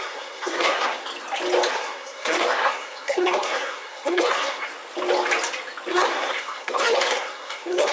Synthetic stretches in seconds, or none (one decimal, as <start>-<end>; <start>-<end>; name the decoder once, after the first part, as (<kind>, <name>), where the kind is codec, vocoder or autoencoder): 0.0-1.1 (codec, SNAC); 1.7-4.7; 5.9-7.9